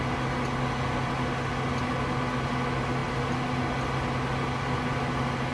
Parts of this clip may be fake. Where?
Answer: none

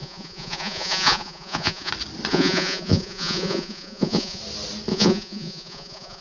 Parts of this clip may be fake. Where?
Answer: 0.0-1.9 (vocoder, Vocos); 2.3-4.4; 4.9-6.2